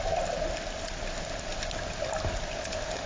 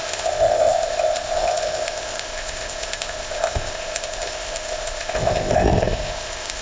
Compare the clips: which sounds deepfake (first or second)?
second